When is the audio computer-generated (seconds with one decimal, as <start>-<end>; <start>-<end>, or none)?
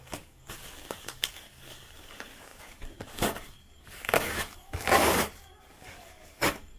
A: 0.0-6.8